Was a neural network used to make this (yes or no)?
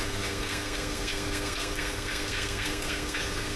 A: yes